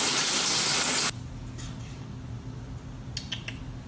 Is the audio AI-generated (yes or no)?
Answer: no